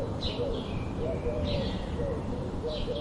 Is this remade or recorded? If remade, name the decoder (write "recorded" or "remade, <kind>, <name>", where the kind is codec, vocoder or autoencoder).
remade, vocoder, BigVGAN v2